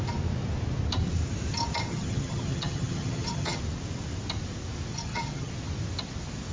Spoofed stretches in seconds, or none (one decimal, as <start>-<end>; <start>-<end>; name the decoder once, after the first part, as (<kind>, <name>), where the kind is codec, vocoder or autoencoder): 1.9-3.6 (vocoder, HiFi-GAN); 4.9-5.5